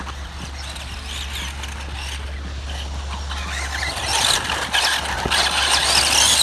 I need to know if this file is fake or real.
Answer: real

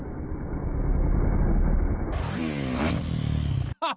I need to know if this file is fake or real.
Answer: real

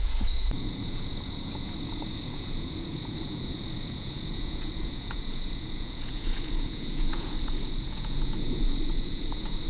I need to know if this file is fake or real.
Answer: fake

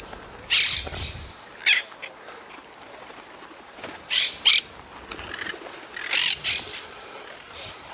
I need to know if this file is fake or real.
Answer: real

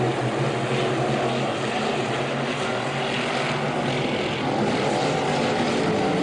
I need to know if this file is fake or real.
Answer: real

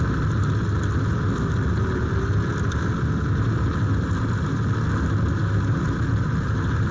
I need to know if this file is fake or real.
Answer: real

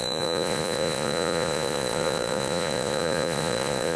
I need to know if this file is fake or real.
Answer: fake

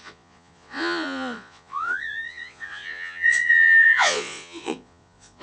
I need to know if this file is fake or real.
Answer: fake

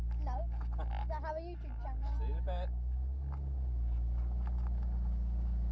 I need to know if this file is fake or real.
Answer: real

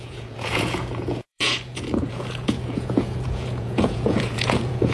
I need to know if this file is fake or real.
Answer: fake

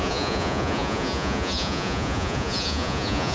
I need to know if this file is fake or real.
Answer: fake